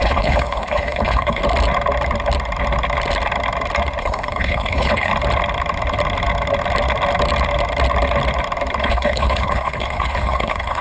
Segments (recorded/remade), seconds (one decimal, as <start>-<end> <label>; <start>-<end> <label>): 0.0-1.4 remade; 1.4-4.0 recorded; 4.0-5.1 remade; 5.1-8.8 recorded; 8.8-10.8 remade